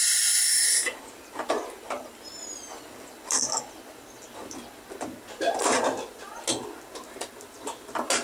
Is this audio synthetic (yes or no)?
no